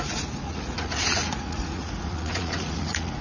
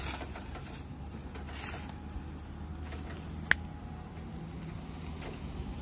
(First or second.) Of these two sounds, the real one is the second